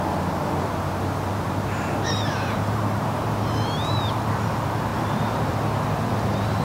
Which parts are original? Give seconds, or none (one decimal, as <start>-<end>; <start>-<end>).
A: 0.0-1.3; 4.2-4.9; 5.5-6.6